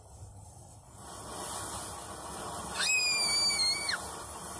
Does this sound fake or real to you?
real